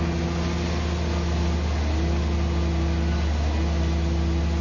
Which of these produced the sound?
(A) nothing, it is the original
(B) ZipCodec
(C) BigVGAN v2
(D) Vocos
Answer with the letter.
A